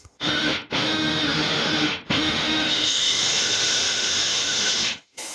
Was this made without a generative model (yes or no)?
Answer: no